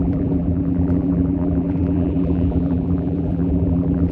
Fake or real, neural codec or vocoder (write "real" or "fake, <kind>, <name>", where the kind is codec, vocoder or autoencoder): fake, vocoder, BigVGAN v2